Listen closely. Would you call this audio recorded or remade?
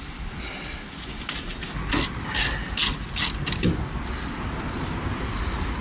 recorded